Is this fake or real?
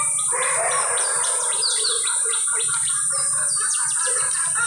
real